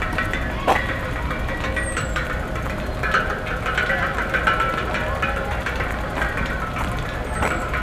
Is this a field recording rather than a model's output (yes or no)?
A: yes